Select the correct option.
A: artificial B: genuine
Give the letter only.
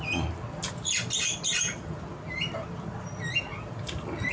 B